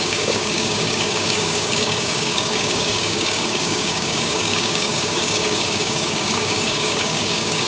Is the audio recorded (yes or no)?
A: no